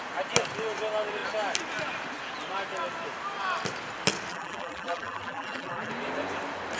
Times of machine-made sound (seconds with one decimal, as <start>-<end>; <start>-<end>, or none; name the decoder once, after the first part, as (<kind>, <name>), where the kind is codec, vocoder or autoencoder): 4.3-5.9 (vocoder, BigVGAN v2)